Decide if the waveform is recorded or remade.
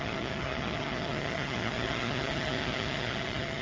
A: remade